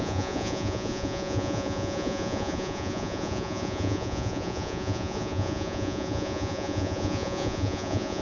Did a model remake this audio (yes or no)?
yes